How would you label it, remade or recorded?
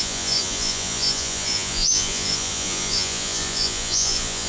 remade